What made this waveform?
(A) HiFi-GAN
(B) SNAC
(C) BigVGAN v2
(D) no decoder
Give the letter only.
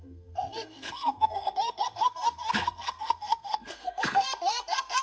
B